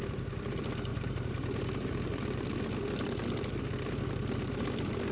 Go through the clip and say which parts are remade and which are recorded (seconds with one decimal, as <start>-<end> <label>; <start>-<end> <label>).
0.0-0.9 recorded; 0.9-2.2 remade; 2.2-5.1 recorded